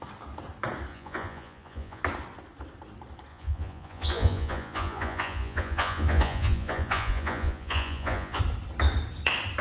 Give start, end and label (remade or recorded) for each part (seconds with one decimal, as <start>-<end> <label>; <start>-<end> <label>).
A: 0.0-0.9 recorded; 0.9-2.0 remade; 2.0-3.3 recorded; 3.3-8.4 remade; 8.4-9.6 recorded

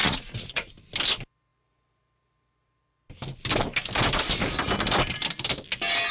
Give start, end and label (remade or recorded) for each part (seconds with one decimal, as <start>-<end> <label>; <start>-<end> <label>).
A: 0.0-0.7 remade; 0.7-6.1 recorded